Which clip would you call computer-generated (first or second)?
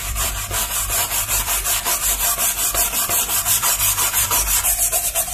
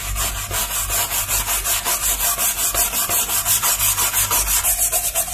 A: first